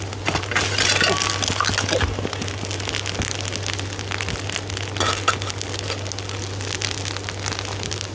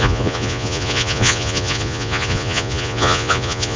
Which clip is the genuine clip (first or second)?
first